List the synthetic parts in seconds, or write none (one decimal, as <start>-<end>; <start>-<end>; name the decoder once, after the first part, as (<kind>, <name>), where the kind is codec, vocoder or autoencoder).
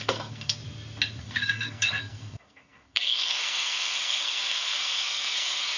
0.0-0.6 (codec, SNAC); 1.2-5.8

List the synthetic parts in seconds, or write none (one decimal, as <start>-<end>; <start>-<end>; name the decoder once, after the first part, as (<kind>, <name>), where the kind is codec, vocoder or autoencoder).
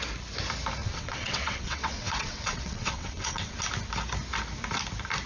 0.8-3.6 (vocoder, WaveNeXt)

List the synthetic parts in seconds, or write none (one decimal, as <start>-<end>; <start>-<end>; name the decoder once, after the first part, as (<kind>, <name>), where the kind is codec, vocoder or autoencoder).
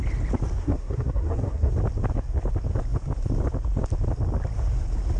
0.6-1.7 (codec, SNAC)